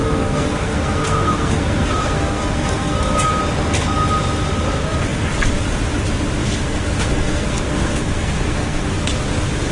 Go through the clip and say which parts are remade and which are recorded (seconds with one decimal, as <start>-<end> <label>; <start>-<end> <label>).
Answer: 0.0-3.4 remade; 3.4-6.4 recorded; 6.4-8.9 remade; 8.9-9.7 recorded